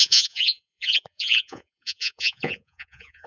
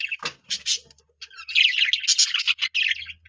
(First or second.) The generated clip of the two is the first